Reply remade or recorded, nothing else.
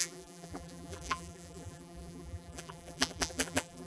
remade